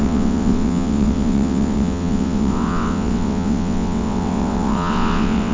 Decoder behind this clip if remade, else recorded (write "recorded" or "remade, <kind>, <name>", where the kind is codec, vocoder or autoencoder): remade, vocoder, WaveNeXt